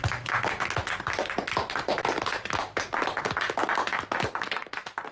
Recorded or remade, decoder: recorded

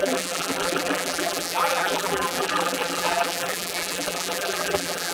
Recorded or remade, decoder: remade, vocoder, BigVGAN v2